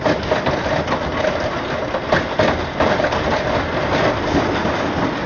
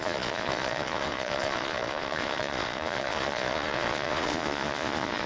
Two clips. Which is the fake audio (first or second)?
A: second